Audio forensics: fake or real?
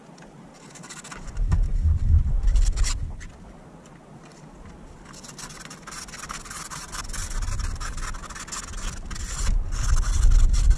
real